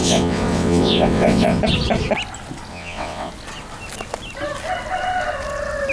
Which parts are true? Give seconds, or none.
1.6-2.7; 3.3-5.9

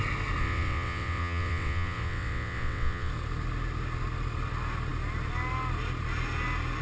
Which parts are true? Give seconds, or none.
0.0-0.4; 3.1-6.8

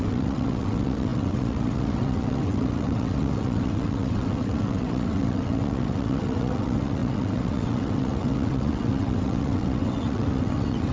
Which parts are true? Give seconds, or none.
none

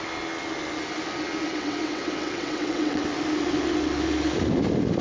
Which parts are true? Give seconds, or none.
0.0-1.5; 3.0-5.0

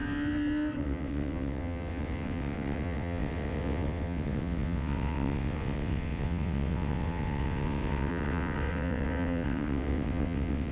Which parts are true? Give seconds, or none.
0.0-0.8